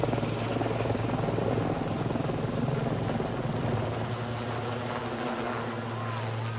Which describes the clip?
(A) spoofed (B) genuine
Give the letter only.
B